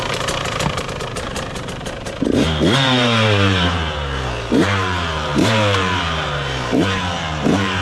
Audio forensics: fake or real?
fake